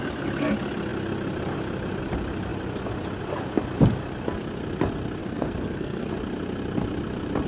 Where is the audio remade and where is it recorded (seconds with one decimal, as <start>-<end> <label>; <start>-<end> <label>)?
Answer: 0.0-5.2 recorded; 5.2-6.1 remade; 6.1-7.5 recorded